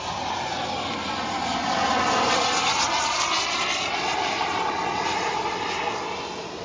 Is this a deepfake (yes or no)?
no